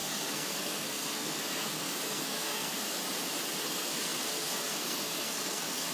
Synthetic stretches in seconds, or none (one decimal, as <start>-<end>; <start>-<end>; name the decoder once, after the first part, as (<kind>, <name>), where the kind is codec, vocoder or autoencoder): 0.0-3.0 (codec, SNAC); 3.6-5.9